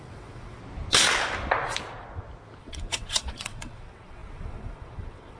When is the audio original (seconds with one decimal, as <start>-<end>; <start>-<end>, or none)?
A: 0.6-2.6